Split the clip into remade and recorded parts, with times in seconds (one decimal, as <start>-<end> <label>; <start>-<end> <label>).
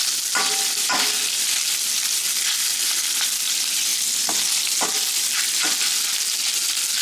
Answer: 0.0-7.0 recorded